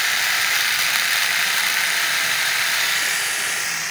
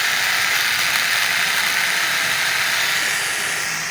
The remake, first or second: first